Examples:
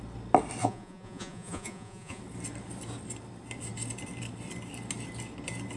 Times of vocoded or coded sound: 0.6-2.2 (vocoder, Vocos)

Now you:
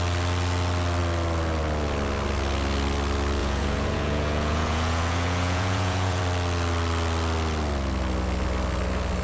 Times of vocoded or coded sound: 3.4-6.2 (vocoder, Vocos)

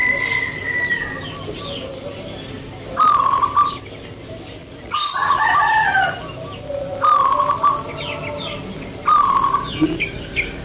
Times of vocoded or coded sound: 4.6-6.1 (vocoder, Vocos)

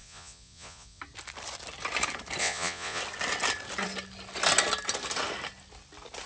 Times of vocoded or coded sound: 0.0-1.0 (vocoder, Vocos); 2.4-3.0

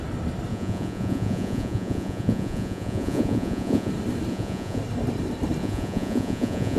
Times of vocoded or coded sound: 0.5-3.9 (vocoder, Vocos); 4.3-4.8; 5.6-6.8

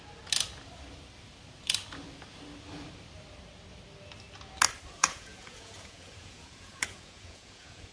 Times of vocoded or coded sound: 5.0-7.9 (vocoder, Vocos)

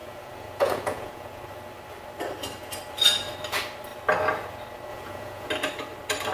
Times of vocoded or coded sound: 0.0-1.4 (vocoder, Vocos); 4.9-5.5

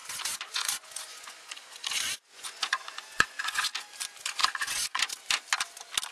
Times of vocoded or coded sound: 0.0-3.7 (vocoder, Vocos); 4.4-5.0